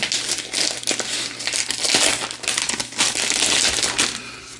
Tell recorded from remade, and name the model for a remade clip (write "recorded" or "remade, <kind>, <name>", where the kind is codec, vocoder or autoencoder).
recorded